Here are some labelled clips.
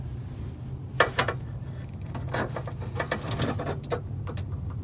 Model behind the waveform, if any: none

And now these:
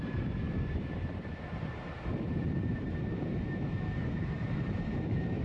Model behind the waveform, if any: vocoder, BigVGAN v2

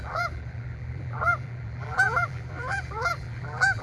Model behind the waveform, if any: vocoder, BigVGAN v2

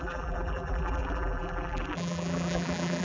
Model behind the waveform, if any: vocoder, BigVGAN v2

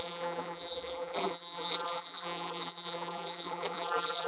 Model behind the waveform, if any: vocoder, BigVGAN v2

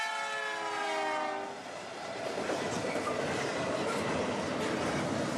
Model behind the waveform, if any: none